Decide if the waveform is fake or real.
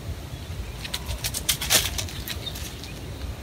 real